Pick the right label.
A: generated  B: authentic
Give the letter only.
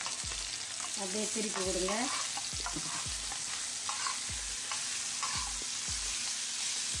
B